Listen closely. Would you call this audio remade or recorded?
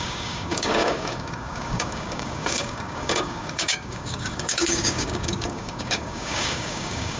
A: remade